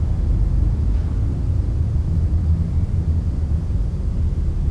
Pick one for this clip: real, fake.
real